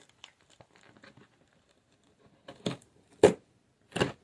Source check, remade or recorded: recorded